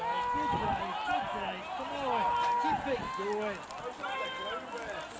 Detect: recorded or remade recorded